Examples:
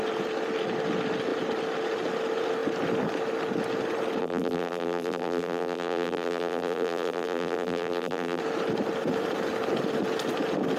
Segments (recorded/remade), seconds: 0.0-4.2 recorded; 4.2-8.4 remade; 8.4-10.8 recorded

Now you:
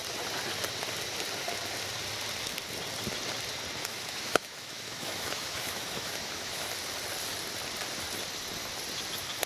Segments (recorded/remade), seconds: 0.0-3.8 recorded; 3.8-6.7 remade; 6.7-9.5 recorded

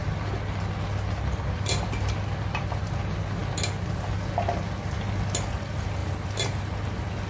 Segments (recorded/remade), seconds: 0.0-6.0 recorded; 6.0-6.6 remade; 6.6-7.3 recorded

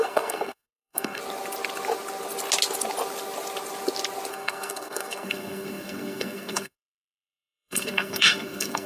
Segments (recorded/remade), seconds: 0.0-1.2 remade; 1.2-4.3 recorded; 4.3-8.9 remade

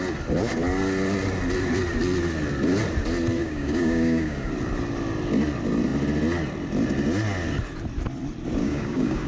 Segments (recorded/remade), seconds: 0.0-3.4 recorded; 3.4-4.5 remade; 4.5-8.6 recorded; 8.6-9.3 remade

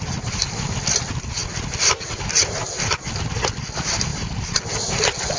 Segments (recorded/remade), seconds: 0.0-5.4 recorded

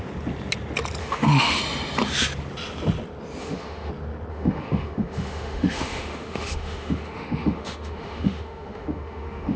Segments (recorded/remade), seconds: 0.0-1.0 recorded; 1.0-1.6 remade; 1.6-3.4 recorded; 3.4-3.9 remade; 3.9-4.3 recorded; 4.3-9.6 remade

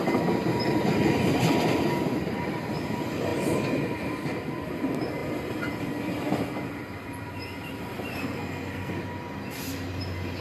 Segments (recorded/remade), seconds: 0.0-8.2 recorded; 8.2-9.0 remade; 9.0-10.4 recorded